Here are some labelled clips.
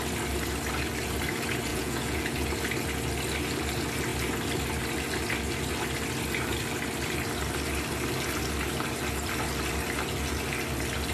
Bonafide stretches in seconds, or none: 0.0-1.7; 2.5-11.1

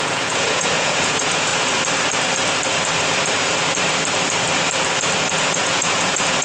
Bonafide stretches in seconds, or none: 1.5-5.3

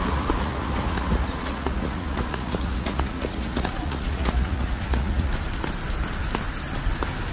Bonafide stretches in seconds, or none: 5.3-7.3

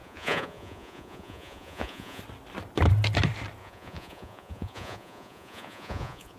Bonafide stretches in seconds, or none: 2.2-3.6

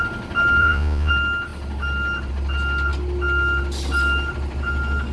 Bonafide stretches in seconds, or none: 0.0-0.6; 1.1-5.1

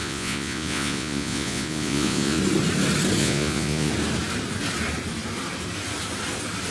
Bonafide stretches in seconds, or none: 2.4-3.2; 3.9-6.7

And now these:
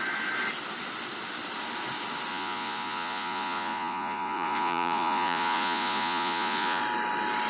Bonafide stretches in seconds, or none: 0.0-2.3; 6.8-7.5

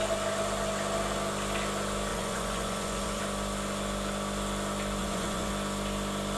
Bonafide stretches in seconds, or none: 0.0-2.1; 3.2-5.0; 5.5-6.4